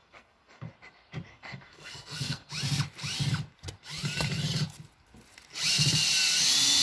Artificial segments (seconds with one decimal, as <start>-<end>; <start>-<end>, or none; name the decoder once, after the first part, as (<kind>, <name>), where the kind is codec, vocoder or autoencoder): 0.0-0.7 (codec, SNAC); 1.3-2.5